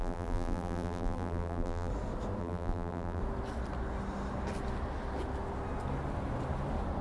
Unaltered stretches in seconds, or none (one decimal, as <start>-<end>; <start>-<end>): 1.9-2.4; 3.2-7.0

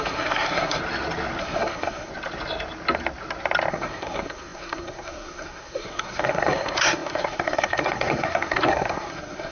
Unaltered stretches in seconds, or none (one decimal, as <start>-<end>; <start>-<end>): 0.8-1.4; 2.1-3.7